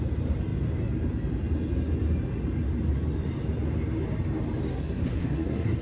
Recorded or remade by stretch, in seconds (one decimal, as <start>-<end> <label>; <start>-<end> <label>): 0.0-4.7 recorded; 4.7-5.8 remade